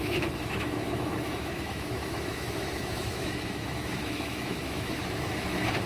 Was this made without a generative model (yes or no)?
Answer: no